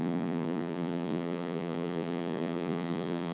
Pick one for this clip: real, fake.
fake